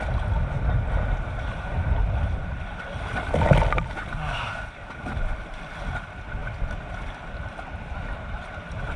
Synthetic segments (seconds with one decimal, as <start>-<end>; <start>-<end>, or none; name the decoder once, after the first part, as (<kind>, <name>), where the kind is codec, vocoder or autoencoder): none